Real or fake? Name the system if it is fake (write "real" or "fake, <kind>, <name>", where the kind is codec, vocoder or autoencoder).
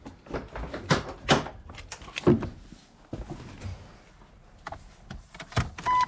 real